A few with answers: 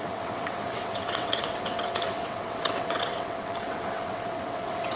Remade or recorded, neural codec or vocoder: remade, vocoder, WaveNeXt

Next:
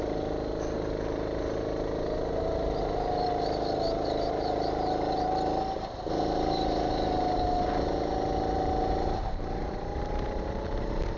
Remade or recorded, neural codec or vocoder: recorded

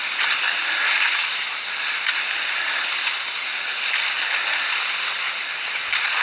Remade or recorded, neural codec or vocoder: recorded